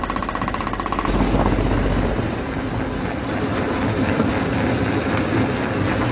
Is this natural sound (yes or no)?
yes